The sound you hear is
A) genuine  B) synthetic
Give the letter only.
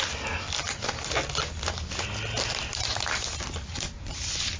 A